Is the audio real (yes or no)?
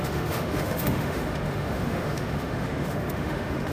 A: no